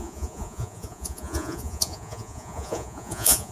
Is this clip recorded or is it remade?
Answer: remade